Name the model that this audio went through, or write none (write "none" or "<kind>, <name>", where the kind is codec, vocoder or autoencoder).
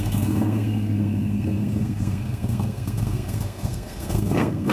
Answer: codec, SNAC